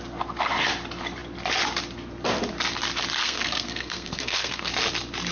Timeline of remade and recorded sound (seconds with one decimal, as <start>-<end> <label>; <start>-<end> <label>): 0.0-3.2 recorded; 3.2-4.7 remade; 4.7-5.3 recorded